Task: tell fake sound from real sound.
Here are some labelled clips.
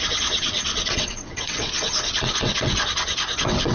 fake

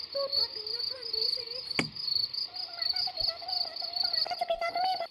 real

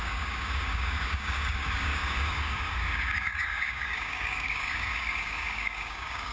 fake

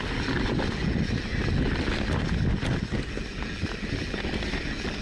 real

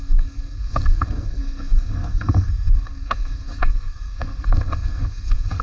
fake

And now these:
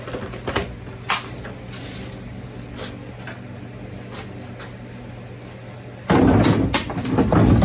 real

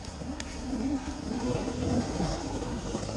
fake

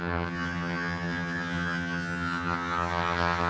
fake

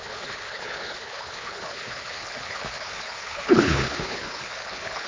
fake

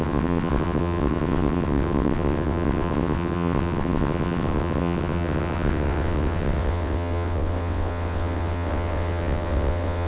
fake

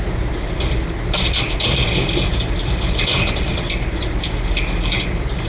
real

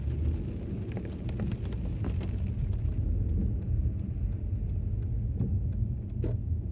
real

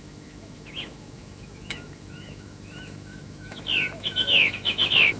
fake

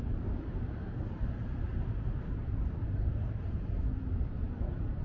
fake